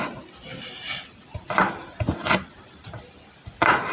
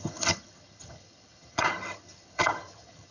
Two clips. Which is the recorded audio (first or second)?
first